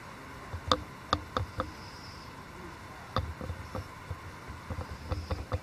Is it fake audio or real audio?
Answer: real